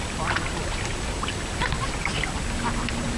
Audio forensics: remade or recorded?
recorded